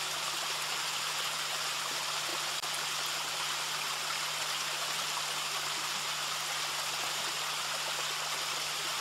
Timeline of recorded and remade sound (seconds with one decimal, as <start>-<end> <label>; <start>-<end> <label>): 0.0-9.0 recorded